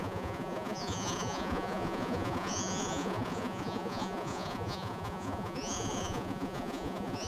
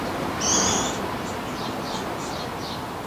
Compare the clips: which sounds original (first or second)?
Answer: second